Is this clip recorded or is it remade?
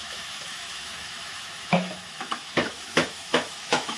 remade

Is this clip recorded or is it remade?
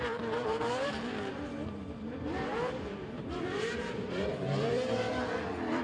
remade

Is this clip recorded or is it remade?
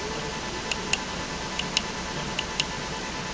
recorded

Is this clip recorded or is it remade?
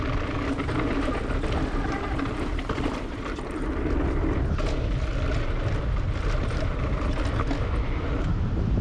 recorded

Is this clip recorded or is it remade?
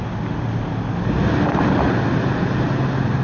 recorded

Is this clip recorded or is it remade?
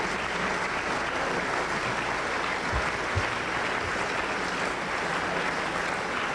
recorded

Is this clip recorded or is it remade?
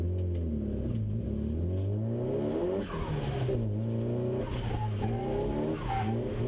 recorded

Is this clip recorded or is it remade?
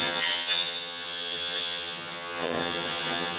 remade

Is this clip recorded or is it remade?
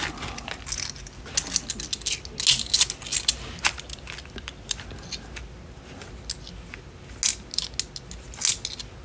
recorded